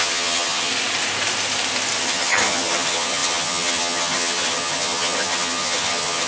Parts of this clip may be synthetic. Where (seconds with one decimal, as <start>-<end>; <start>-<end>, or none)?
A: 0.0-0.7; 2.0-6.3